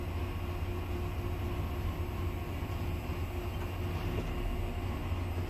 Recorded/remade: recorded